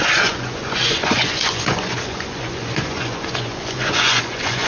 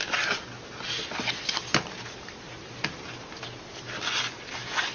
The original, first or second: second